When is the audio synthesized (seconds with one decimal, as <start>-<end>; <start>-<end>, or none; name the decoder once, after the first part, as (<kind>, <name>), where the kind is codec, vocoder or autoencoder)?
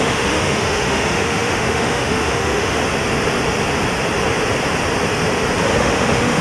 0.0-2.8 (autoencoder, DAC-VAE); 5.8-6.4